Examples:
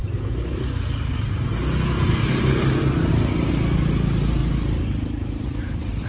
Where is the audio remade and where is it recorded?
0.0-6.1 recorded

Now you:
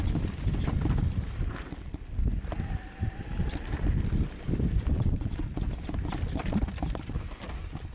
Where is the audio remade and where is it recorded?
0.0-4.9 recorded; 4.9-5.5 remade; 5.5-7.9 recorded

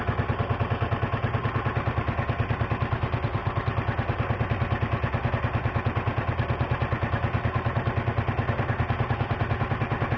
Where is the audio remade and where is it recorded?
0.0-10.2 recorded

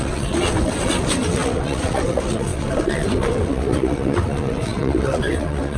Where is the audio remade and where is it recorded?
0.0-5.8 remade

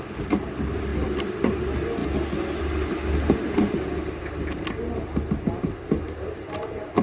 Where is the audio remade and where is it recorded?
0.0-7.0 recorded

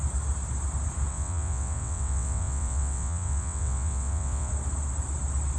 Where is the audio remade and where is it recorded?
0.0-1.1 recorded; 1.1-4.5 remade; 4.5-5.6 recorded

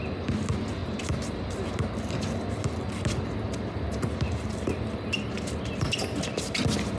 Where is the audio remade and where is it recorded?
0.0-7.0 recorded

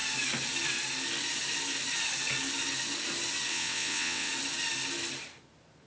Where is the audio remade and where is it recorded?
0.0-3.5 recorded; 3.5-4.3 remade; 4.3-5.9 recorded